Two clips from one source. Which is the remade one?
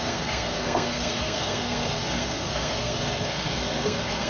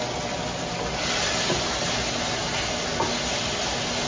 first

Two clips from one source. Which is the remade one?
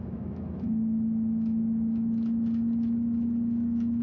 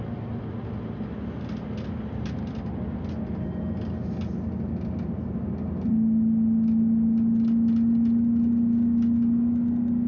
first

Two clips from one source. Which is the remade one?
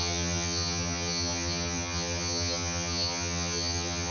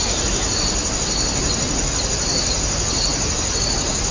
first